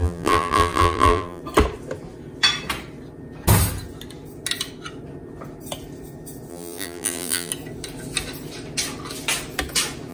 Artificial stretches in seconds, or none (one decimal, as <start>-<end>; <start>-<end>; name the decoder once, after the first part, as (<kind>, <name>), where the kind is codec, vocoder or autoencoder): 0.0-1.4 (vocoder, BigVGAN v2); 6.5-7.5